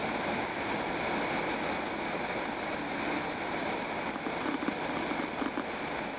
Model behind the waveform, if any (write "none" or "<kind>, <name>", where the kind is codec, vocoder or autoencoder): none